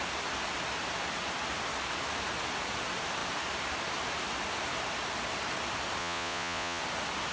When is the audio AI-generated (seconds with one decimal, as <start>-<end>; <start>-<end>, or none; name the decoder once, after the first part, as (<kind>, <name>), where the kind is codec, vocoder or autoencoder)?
6.0-6.8 (vocoder, Vocos)